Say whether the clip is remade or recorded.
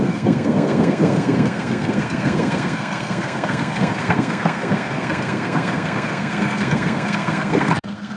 remade